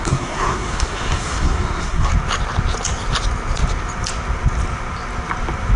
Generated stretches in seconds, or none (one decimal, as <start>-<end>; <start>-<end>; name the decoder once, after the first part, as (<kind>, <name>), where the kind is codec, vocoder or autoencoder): 0.0-2.1 (codec, SNAC)